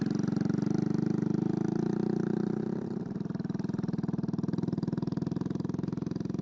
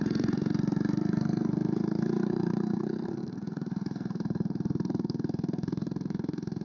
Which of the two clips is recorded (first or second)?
first